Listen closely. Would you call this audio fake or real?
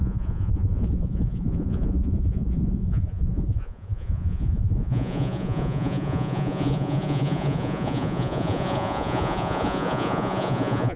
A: fake